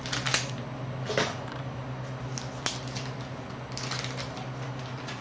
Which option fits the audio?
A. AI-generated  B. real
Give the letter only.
B